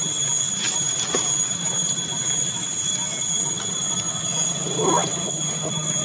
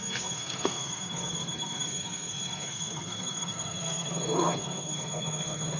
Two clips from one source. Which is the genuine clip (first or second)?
first